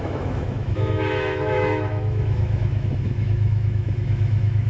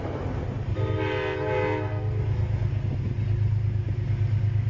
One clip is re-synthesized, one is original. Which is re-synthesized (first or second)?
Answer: first